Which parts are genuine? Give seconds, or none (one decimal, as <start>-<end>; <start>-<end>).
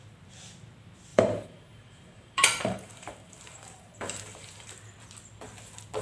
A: 0.0-1.1; 4.7-6.0